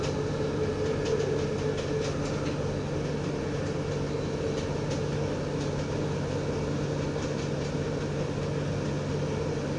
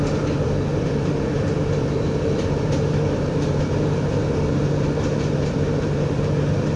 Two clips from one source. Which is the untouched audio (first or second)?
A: first